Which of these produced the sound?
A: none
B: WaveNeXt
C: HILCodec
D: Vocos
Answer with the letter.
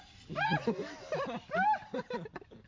A